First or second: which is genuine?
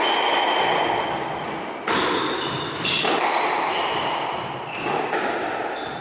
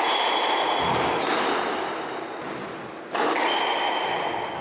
second